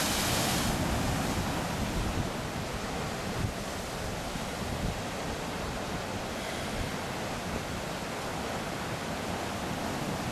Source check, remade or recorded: recorded